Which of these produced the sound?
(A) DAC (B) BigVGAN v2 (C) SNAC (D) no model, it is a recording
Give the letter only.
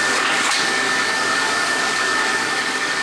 A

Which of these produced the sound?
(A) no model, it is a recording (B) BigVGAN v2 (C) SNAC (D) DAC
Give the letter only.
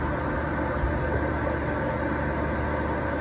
A